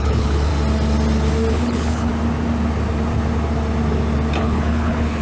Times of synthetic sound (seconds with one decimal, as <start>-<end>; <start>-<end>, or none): 0.0-0.5; 1.5-2.1; 4.4-5.2